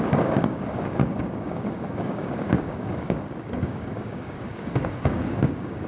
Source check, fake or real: fake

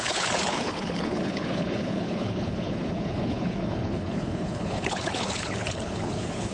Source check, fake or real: fake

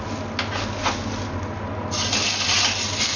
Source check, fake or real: real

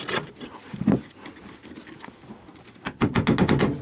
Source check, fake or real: real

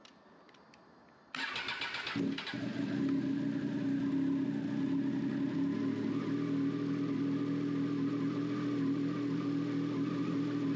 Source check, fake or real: real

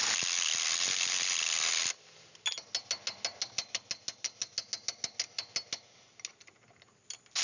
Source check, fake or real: real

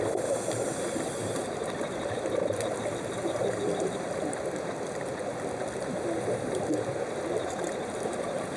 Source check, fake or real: real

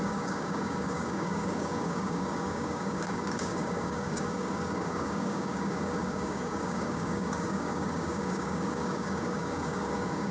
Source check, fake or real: fake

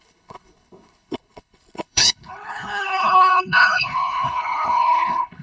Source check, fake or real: fake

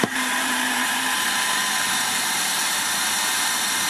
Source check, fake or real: fake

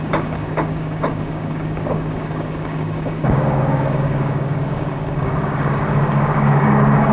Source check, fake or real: fake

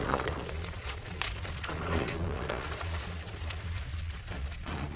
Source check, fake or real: fake